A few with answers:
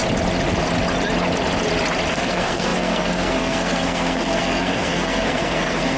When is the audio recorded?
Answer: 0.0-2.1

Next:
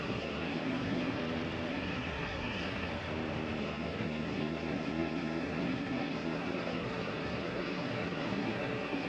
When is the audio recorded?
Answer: 1.2-1.7; 2.9-3.6